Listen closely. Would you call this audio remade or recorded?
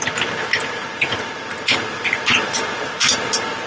remade